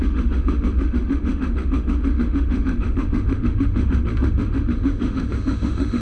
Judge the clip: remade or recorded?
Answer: remade